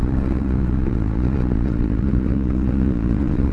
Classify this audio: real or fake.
fake